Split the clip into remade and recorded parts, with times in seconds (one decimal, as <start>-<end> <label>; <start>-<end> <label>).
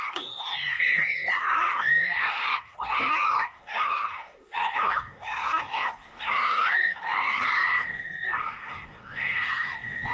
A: 0.0-10.1 remade